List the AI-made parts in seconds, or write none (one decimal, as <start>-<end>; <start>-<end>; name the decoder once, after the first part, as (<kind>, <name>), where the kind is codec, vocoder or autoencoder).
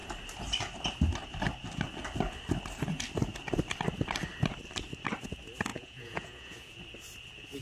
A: 5.7-6.8 (vocoder, Vocos)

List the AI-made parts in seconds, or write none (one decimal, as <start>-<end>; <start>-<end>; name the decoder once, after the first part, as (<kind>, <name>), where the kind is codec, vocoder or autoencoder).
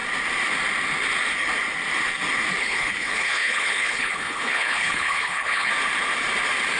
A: 2.6-5.7 (codec, HILCodec)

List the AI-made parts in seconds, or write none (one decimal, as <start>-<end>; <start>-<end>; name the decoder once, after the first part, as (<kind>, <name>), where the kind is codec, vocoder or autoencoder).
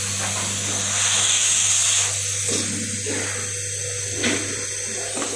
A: 1.2-1.7 (codec, DAC)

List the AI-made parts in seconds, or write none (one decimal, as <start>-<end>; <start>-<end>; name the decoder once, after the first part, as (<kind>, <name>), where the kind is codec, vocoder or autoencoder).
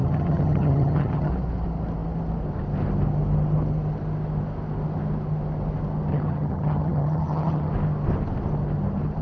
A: 0.0-1.3 (vocoder, HiFi-GAN); 6.1-7.7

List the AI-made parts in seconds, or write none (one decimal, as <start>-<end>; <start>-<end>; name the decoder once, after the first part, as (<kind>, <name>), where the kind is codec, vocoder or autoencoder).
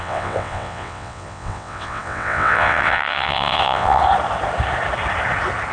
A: 0.0-4.0 (vocoder, WaveNeXt)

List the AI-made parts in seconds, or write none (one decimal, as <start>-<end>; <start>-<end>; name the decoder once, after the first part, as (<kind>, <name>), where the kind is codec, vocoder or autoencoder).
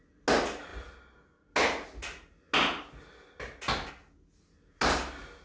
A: none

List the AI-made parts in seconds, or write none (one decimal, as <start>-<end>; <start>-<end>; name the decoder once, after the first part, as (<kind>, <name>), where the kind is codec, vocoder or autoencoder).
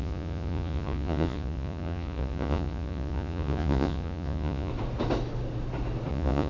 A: 0.0-4.7 (vocoder, Vocos); 6.1-6.5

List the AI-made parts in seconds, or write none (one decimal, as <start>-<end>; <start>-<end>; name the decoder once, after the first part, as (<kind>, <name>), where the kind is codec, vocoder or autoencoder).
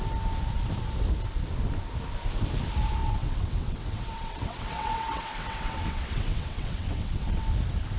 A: 3.0-7.4 (vocoder, WaveNeXt)